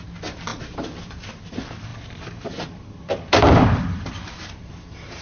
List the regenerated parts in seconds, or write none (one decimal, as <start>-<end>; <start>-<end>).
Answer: 0.5-1.4; 1.9-4.7